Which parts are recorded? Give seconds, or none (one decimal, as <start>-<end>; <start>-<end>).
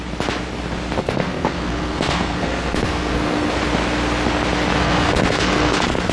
0.0-1.0; 3.5-4.8